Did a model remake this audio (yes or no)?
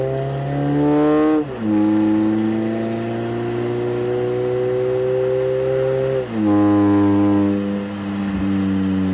no